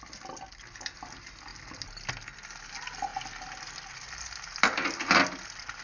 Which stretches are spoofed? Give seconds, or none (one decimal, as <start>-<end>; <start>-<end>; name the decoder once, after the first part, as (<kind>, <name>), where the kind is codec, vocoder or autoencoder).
none